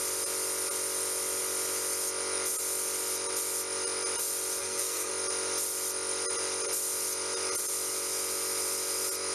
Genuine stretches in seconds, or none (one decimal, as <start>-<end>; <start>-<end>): 0.0-4.6; 5.1-9.3